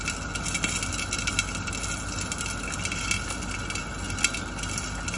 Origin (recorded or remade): recorded